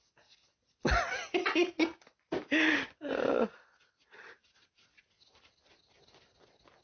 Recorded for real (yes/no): yes